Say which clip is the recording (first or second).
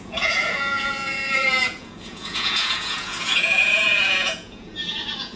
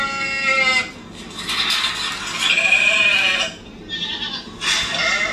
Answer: second